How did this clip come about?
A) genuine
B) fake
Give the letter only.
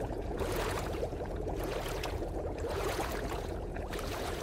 B